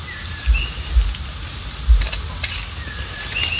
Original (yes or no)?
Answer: yes